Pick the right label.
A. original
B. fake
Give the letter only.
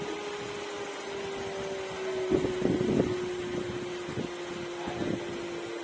A